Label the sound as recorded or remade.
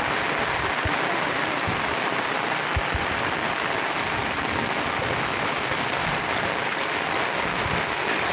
recorded